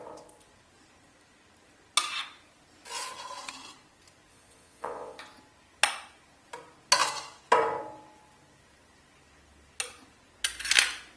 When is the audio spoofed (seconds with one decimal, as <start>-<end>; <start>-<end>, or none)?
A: 4.3-5.2